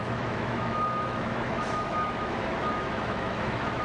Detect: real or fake fake